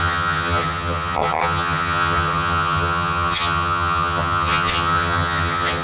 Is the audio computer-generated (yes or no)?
yes